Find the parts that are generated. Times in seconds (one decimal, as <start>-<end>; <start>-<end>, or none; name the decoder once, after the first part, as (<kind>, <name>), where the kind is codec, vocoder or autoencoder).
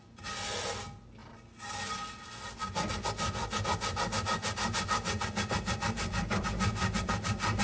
none